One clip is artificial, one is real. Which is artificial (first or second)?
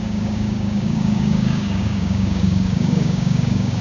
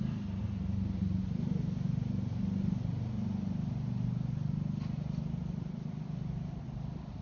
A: first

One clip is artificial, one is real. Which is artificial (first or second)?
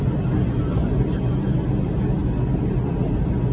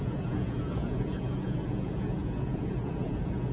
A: second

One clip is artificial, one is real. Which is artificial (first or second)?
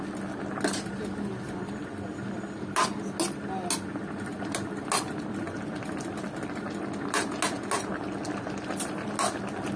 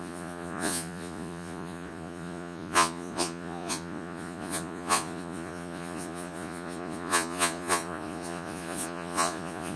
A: second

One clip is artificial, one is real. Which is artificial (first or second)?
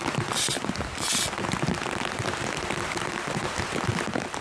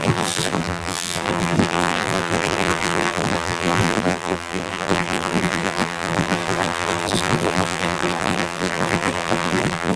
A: second